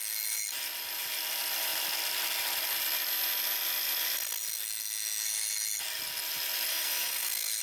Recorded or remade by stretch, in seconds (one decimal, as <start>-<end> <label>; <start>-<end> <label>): 0.0-6.7 recorded; 6.7-7.6 remade